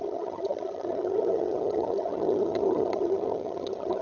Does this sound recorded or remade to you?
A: remade